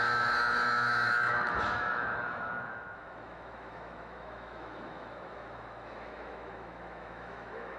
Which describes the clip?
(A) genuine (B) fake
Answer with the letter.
B